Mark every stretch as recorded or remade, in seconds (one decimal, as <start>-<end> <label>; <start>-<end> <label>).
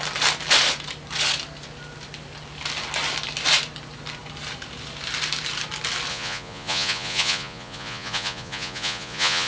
0.0-6.1 recorded; 6.1-9.5 remade